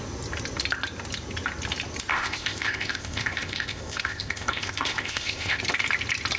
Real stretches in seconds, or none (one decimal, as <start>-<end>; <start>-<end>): 0.0-2.1; 5.6-6.4